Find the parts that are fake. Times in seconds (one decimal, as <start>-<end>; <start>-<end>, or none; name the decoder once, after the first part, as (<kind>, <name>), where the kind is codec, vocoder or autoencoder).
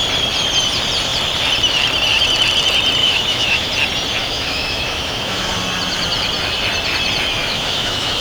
3.0-3.7 (autoencoder, DAC-VAE); 4.2-5.5; 7.4-8.2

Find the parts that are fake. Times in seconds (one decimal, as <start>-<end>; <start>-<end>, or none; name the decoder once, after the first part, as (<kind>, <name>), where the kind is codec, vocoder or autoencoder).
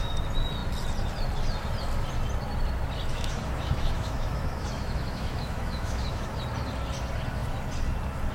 3.1-6.4 (autoencoder, DAC-VAE)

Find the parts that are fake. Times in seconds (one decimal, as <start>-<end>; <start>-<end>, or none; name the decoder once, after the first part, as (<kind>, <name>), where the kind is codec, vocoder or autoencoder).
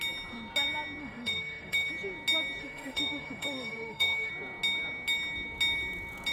1.0-1.9 (autoencoder, DAC-VAE); 2.6-4.3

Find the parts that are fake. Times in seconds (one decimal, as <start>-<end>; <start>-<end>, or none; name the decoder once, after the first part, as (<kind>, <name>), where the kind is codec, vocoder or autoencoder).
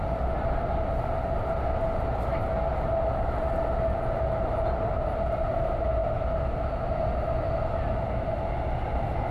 none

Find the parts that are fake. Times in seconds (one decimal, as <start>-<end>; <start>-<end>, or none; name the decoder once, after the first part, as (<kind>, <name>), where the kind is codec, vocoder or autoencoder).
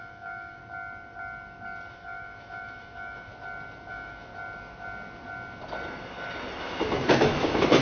0.0-0.6 (autoencoder, DAC-VAE); 1.9-3.3; 3.9-4.3; 6.6-7.8